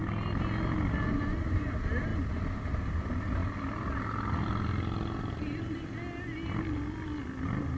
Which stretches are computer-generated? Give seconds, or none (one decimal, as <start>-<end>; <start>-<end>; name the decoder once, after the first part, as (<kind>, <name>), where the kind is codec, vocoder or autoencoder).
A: none